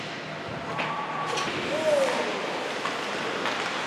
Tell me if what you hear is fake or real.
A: real